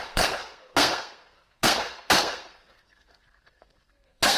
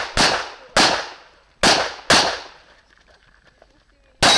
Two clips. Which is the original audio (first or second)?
second